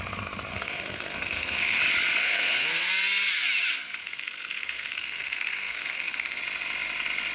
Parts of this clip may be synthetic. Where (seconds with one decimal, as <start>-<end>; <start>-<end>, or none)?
0.5-1.8; 2.2-2.9; 4.0-6.4